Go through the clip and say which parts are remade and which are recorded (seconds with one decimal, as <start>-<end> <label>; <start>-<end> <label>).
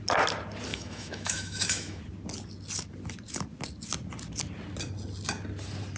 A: 0.0-0.7 recorded; 0.7-2.0 remade; 2.0-6.0 recorded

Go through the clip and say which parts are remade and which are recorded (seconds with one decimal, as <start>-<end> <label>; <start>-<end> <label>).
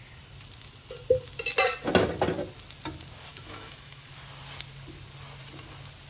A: 0.0-3.3 recorded; 3.3-4.0 remade; 4.0-6.1 recorded